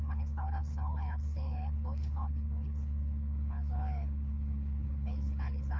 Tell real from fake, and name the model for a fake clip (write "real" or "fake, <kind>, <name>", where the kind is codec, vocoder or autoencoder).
fake, codec, HILCodec